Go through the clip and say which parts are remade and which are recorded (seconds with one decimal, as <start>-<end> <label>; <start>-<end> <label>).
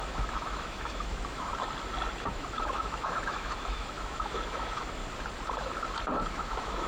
0.0-1.5 remade; 1.5-2.2 recorded; 2.2-5.0 remade; 5.0-6.3 recorded; 6.3-6.9 remade